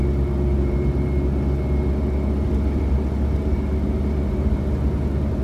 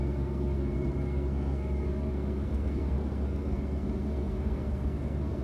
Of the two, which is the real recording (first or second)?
first